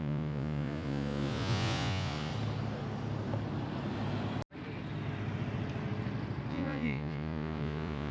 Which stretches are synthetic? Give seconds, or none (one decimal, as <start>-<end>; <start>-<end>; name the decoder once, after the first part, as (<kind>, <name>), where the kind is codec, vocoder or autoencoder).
0.0-2.3 (vocoder, Vocos); 6.5-8.1